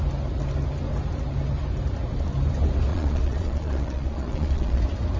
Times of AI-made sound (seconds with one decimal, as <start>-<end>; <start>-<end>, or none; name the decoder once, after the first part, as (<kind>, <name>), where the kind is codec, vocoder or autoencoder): 2.9-4.8 (vocoder, Vocos)